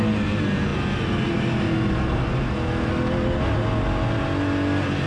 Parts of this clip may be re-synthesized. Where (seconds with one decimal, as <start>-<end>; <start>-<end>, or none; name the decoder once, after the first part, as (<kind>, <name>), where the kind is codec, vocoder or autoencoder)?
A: none